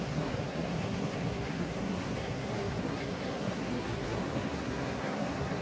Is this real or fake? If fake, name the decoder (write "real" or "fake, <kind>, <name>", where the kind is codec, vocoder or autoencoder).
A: fake, codec, SNAC